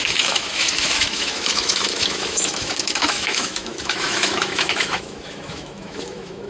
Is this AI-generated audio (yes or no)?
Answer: yes